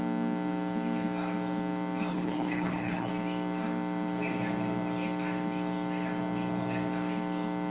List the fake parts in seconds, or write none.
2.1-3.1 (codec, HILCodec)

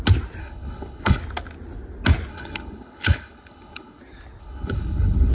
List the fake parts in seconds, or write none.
0.4-1.2 (codec, HILCodec); 2.3-4.0; 4.4-5.3